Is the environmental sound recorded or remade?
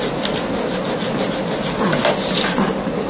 recorded